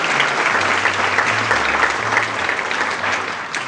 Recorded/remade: recorded